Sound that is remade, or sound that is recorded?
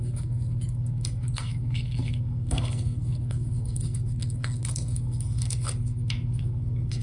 remade